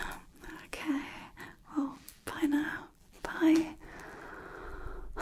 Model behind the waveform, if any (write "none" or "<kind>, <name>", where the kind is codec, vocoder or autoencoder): vocoder, BigVGAN v2